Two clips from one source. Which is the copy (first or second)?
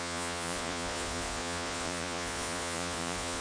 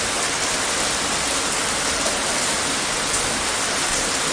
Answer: first